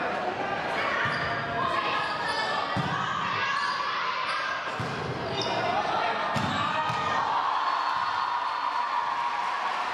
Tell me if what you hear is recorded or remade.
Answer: recorded